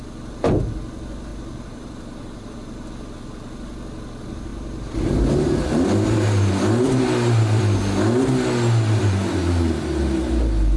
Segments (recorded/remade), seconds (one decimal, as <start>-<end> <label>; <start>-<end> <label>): 0.0-1.3 recorded; 1.3-2.9 remade; 2.9-4.5 recorded; 4.5-7.6 remade; 7.6-9.0 recorded; 9.0-9.8 remade; 9.8-10.8 recorded